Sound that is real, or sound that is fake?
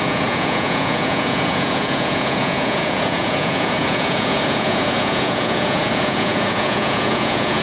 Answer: fake